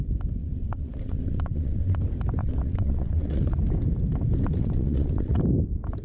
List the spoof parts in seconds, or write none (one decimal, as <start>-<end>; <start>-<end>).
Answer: 0.4-2.0; 2.4-3.6; 4.6-5.4